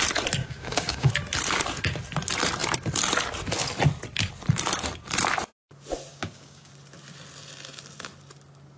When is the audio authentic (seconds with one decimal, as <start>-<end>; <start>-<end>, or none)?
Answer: 0.0-0.4; 1.1-6.1; 6.7-8.8